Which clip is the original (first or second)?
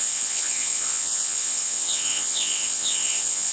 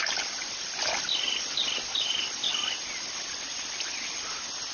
second